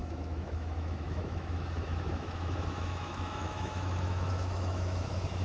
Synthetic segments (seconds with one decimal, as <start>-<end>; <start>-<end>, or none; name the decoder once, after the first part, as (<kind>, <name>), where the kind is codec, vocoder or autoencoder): 0.0-5.4 (autoencoder, DAC-VAE)